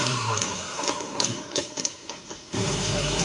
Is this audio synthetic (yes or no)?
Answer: yes